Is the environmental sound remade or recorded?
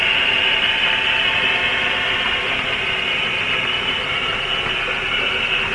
recorded